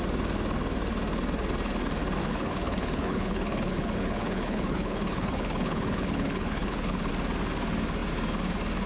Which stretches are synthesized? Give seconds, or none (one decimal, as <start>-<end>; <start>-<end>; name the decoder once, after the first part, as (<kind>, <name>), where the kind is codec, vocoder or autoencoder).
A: 2.2-7.1 (codec, HILCodec)